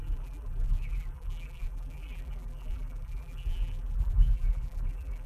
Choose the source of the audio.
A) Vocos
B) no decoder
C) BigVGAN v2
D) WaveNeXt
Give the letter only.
C